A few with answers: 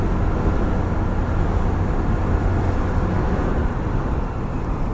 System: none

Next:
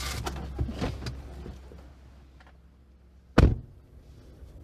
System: none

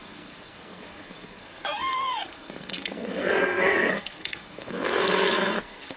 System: codec, SNAC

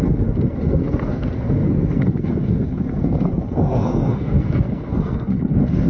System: codec, SNAC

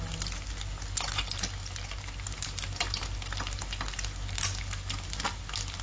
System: none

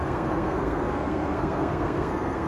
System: codec, SNAC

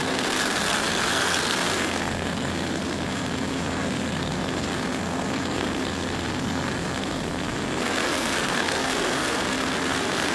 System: codec, SNAC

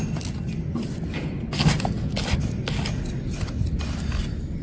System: none